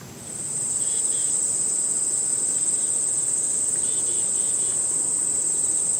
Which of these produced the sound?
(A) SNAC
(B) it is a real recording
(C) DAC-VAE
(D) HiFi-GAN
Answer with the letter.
B